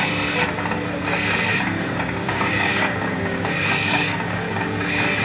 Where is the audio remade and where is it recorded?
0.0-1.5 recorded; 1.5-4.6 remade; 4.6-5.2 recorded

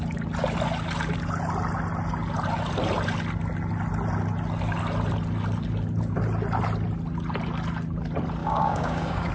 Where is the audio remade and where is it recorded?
0.0-8.4 recorded; 8.4-9.3 remade

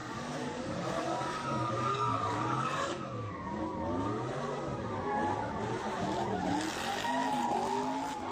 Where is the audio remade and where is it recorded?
0.0-3.6 remade; 3.6-8.3 recorded

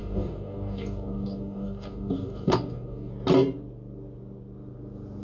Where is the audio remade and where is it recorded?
0.0-3.1 remade; 3.1-5.2 recorded

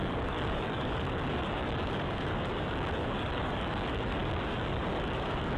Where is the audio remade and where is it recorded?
0.0-5.6 remade

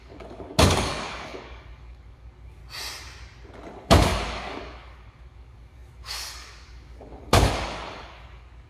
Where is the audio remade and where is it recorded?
0.0-2.6 remade; 2.6-3.7 recorded; 3.7-8.7 remade

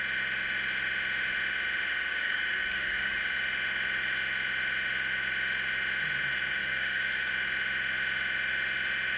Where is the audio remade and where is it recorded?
0.0-2.1 recorded; 2.1-3.2 remade; 3.2-6.6 recorded; 6.6-7.3 remade; 7.3-9.2 recorded